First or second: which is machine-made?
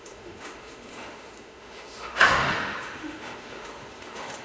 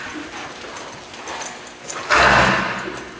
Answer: first